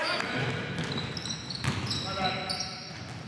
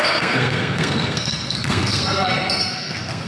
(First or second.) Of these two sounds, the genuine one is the first